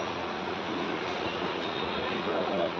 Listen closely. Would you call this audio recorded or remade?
remade